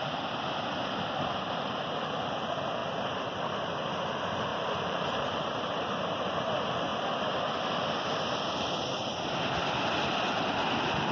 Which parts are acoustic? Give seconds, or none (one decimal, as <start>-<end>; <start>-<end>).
0.0-4.5; 6.0-11.1